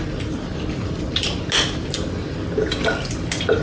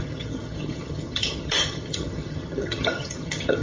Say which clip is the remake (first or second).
second